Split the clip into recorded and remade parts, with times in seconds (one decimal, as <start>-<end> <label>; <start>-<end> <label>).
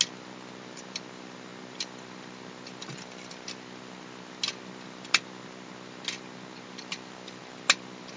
0.0-8.2 recorded